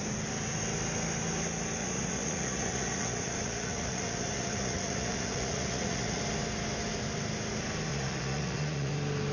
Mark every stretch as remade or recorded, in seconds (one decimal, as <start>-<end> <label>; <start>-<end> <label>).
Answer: 0.0-1.8 recorded; 1.8-6.2 remade; 6.2-7.9 recorded; 7.9-8.9 remade; 8.9-9.3 recorded